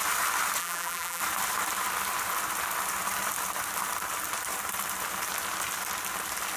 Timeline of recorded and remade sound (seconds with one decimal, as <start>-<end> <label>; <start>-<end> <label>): 0.0-0.6 recorded; 0.6-1.2 remade; 1.2-6.6 recorded